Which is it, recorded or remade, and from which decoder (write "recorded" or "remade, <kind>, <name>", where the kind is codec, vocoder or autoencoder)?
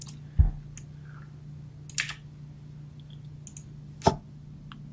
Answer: recorded